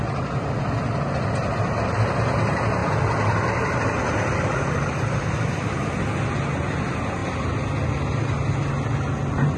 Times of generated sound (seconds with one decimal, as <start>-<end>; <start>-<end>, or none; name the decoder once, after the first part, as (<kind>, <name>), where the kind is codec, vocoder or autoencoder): 2.8-5.1 (vocoder, BigVGAN v2)